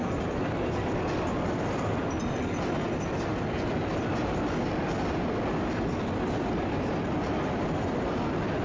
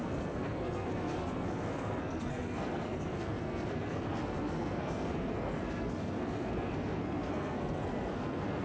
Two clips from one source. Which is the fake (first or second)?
second